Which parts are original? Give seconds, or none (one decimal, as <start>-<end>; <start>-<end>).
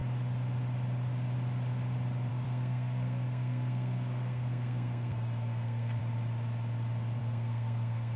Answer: 0.0-2.3; 6.0-7.2